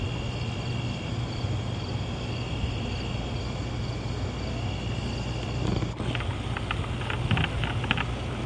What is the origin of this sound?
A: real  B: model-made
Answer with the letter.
A